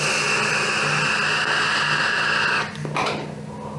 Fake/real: real